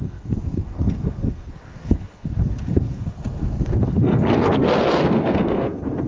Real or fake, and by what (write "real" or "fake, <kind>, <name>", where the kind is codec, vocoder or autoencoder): fake, codec, SNAC